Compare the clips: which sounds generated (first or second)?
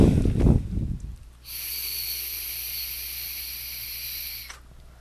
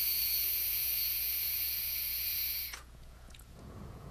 second